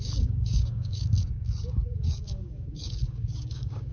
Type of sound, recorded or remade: remade